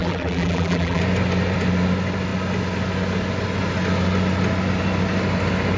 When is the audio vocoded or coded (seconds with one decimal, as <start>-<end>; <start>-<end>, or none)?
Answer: 0.0-1.0